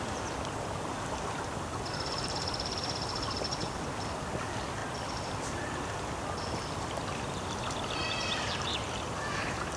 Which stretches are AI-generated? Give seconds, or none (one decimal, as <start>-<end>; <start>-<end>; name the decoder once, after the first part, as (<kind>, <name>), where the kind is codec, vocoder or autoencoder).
none